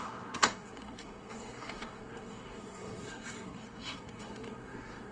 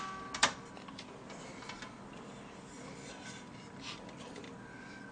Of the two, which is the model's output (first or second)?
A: first